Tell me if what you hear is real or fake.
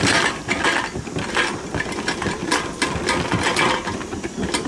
real